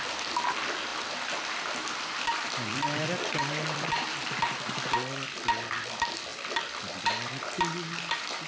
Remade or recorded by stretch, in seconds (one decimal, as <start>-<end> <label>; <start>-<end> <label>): 0.0-0.9 recorded; 0.9-4.4 remade; 4.4-8.5 recorded